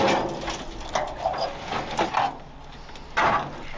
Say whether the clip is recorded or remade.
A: recorded